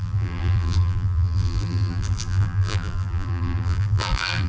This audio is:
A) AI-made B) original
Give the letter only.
A